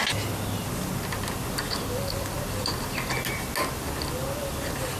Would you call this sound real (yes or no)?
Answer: yes